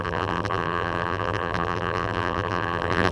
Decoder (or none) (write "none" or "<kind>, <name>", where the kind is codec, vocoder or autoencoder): vocoder, BigVGAN v2